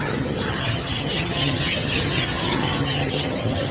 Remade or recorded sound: remade